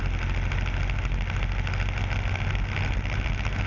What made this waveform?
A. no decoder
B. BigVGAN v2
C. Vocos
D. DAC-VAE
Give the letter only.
A